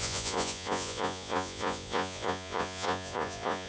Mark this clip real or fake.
fake